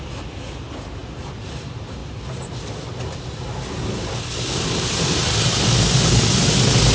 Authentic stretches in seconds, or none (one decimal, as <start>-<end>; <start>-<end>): 0.0-6.9